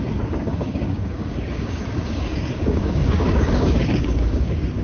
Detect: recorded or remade remade